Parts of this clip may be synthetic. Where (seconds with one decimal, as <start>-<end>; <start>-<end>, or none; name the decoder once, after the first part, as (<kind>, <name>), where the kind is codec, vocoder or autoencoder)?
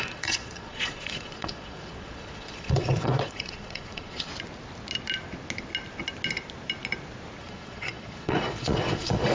0.0-4.3 (vocoder, Vocos); 7.4-9.3